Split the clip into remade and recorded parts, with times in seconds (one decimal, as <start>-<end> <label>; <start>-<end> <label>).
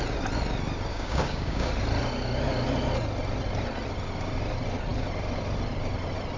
0.0-0.9 recorded; 0.9-1.7 remade; 1.7-6.4 recorded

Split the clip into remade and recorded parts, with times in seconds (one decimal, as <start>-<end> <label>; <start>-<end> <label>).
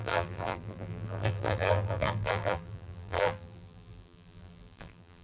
0.0-5.2 remade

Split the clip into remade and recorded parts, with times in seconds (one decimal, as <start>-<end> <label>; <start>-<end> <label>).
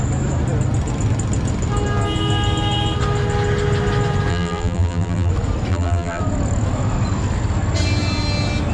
0.0-4.3 recorded; 4.3-5.3 remade; 5.3-5.7 recorded; 5.7-6.2 remade; 6.2-8.7 recorded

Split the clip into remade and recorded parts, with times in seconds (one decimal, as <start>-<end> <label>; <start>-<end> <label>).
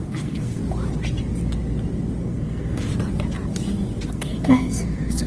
0.0-0.6 remade; 0.6-2.2 recorded; 2.2-2.9 remade; 2.9-4.1 recorded; 4.1-5.3 remade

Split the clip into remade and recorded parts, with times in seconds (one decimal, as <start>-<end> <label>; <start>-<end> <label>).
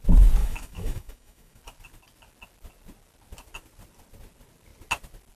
0.0-0.4 recorded; 0.4-1.6 remade; 1.6-5.3 recorded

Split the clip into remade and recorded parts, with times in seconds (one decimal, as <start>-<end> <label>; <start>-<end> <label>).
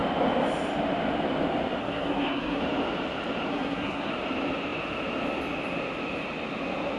0.0-1.8 recorded; 1.8-2.6 remade; 2.6-3.5 recorded; 3.5-4.1 remade; 4.1-7.0 recorded